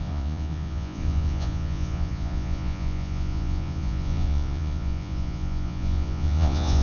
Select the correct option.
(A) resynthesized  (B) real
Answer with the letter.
A